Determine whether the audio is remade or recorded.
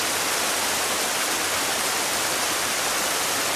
recorded